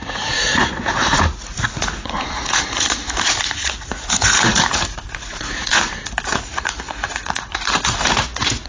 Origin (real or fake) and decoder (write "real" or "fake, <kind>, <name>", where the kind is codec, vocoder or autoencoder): fake, vocoder, Vocos